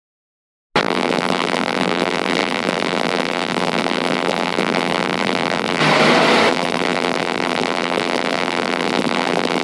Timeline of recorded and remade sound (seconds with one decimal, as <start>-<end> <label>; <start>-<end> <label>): 0.0-0.8 recorded; 0.8-5.8 remade; 5.8-6.5 recorded; 6.5-9.6 remade